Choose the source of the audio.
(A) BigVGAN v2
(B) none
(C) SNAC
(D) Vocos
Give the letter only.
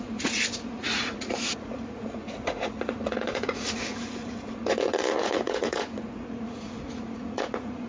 D